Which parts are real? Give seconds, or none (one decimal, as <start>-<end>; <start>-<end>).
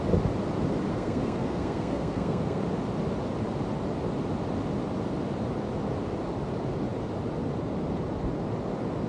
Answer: 0.0-0.9; 2.6-9.1